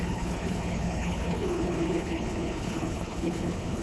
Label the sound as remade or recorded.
remade